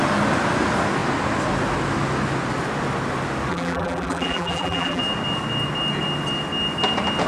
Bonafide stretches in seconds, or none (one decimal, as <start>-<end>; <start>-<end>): 0.0-3.5; 5.0-7.3